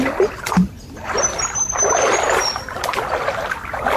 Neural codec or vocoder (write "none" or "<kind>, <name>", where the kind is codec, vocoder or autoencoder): none